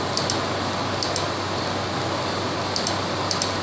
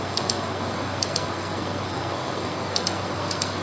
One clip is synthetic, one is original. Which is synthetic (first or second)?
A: second